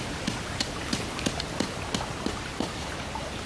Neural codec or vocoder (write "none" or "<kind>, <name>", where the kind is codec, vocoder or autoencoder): none